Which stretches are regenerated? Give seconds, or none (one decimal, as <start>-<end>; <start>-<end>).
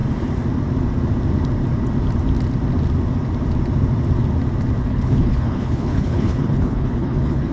4.8-7.5